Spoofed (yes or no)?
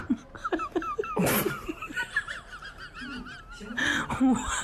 no